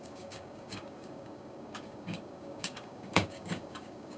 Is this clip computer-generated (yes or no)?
yes